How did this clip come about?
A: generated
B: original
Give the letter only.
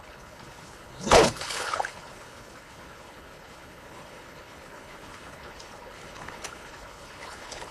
A